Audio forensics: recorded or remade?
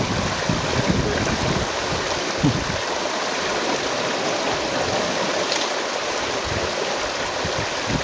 recorded